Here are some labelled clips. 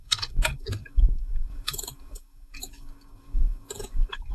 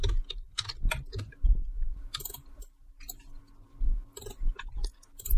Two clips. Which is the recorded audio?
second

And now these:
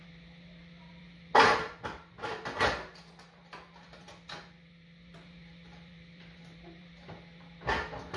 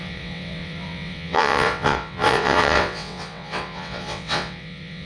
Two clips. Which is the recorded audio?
first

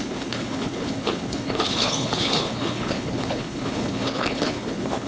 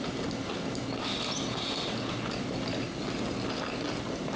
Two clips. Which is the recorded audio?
second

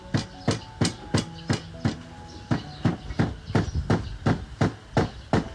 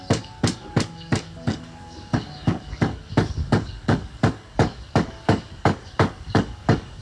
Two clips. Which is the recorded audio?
first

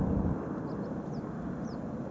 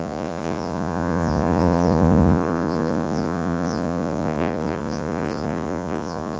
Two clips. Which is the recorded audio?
first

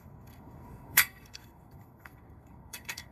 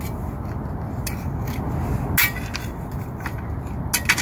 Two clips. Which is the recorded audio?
second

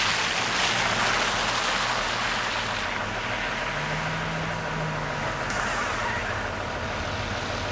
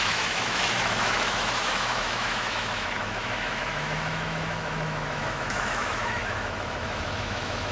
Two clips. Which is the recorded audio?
first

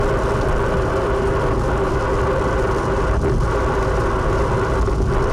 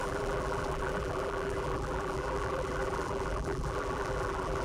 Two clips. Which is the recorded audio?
first